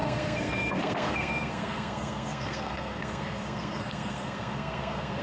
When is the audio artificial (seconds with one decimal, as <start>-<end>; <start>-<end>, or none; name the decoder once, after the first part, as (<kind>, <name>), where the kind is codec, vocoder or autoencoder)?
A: 0.0-5.2 (codec, SNAC)